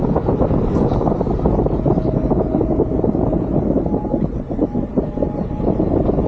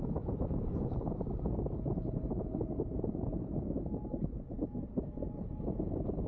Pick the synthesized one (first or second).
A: second